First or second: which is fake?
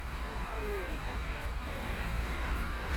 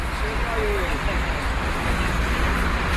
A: first